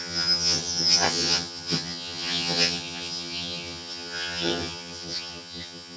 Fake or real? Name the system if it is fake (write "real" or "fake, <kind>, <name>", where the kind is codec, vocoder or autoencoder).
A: fake, vocoder, HiFi-GAN